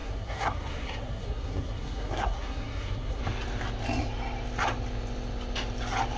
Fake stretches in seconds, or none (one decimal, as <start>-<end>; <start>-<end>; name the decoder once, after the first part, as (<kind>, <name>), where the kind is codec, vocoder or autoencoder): 0.0-3.2 (codec, SNAC)